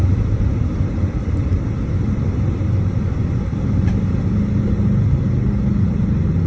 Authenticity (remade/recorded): recorded